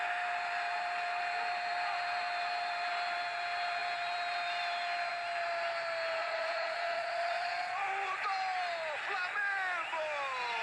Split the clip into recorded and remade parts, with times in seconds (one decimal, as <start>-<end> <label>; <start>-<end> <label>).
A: 0.0-6.2 recorded; 6.2-7.8 remade; 7.8-10.6 recorded